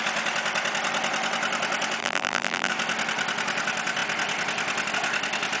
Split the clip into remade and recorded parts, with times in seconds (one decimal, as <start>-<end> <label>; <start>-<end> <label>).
0.0-2.0 recorded; 2.0-2.7 remade; 2.7-5.6 recorded